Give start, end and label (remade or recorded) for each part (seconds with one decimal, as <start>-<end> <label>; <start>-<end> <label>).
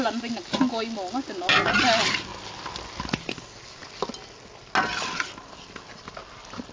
0.0-6.7 recorded